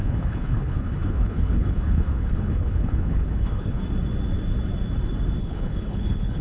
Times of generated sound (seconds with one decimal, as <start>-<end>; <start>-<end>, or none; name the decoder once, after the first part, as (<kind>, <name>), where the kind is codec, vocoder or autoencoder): 0.0-3.8 (codec, HILCodec); 5.4-6.4